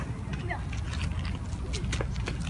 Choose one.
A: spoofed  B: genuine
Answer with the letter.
B